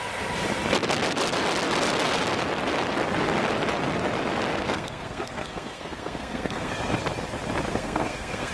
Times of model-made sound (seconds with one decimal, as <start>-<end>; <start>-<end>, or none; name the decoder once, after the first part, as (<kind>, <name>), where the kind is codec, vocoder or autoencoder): 4.5-6.7 (codec, SNAC); 7.7-8.5